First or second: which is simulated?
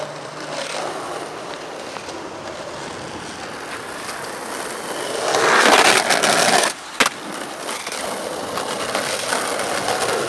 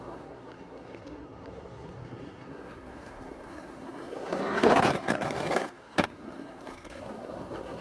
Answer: second